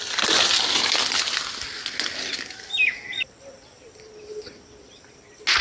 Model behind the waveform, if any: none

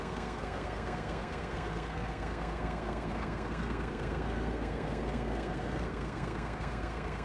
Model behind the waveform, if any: codec, SNAC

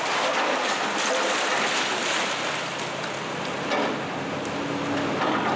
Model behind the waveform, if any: none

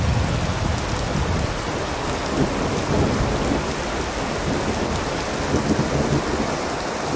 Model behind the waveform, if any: none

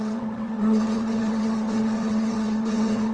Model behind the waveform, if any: vocoder, WaveNeXt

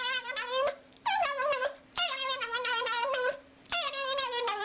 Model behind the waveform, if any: vocoder, BigVGAN v2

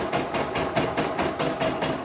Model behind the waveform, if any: none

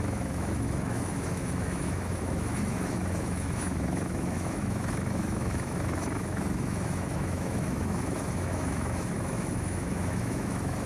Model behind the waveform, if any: autoencoder, DAC-VAE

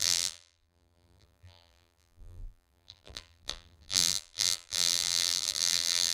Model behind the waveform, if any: vocoder, BigVGAN v2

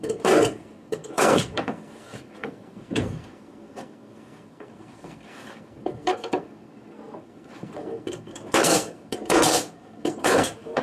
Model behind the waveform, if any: codec, SNAC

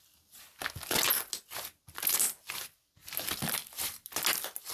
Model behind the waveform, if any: none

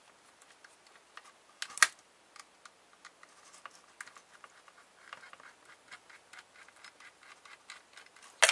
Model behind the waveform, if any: none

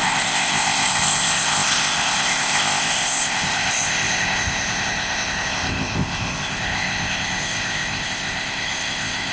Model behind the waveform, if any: codec, ZipCodec